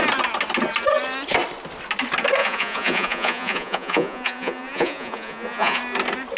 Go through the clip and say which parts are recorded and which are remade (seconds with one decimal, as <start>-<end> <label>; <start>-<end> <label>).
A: 0.0-2.4 recorded; 2.4-5.8 remade; 5.8-6.4 recorded